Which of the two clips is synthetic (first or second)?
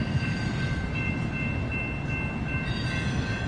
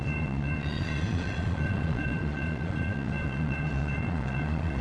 second